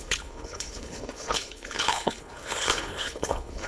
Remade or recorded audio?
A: remade